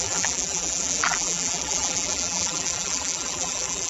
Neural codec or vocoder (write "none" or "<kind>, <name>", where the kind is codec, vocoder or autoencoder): vocoder, BigVGAN v2